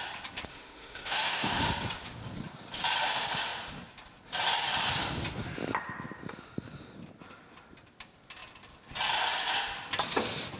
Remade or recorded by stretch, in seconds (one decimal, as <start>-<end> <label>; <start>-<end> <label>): 0.0-0.5 recorded; 0.5-1.6 remade; 1.6-10.6 recorded

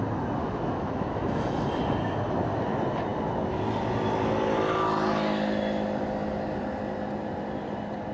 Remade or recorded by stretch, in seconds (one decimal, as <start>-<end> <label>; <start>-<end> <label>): 0.0-0.4 recorded; 0.4-1.7 remade; 1.7-8.1 recorded